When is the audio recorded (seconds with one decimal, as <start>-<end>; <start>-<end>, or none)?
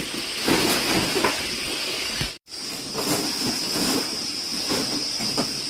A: 0.0-1.6; 2.9-5.7